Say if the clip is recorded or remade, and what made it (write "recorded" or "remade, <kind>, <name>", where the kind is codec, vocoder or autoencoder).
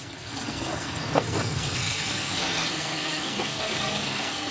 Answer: remade, codec, SNAC